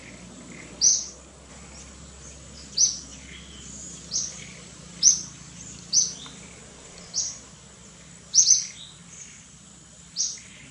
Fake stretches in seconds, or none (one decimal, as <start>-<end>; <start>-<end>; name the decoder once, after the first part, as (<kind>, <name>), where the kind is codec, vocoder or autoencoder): none

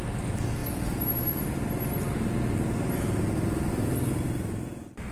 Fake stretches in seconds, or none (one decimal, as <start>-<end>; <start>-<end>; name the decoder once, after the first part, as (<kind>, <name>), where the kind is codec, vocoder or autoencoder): none

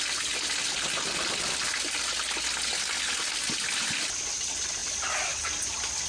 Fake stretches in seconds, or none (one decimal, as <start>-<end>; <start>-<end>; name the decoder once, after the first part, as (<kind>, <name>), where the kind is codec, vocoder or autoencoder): none